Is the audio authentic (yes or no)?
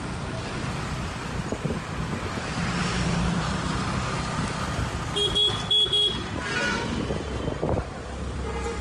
yes